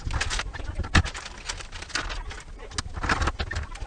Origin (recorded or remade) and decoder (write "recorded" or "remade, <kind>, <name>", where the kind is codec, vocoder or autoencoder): recorded